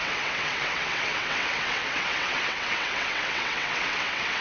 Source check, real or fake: fake